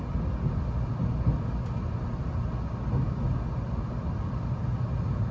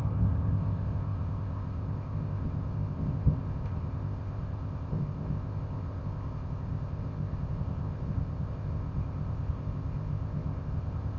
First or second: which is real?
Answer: first